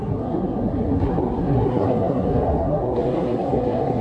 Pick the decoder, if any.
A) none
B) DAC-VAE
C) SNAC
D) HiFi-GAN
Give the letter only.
C